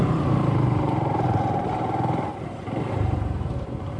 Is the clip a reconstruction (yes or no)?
yes